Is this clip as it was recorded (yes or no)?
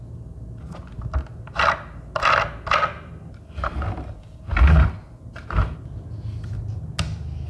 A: yes